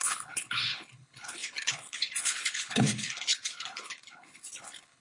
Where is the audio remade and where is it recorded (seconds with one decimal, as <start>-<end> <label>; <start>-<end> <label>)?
0.0-5.0 remade